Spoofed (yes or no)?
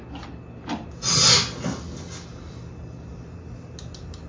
no